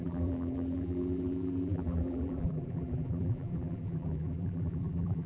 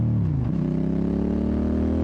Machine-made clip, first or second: first